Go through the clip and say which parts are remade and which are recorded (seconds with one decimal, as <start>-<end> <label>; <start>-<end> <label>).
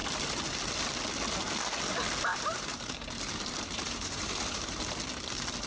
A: 0.0-2.3 recorded; 2.3-4.8 remade; 4.8-5.7 recorded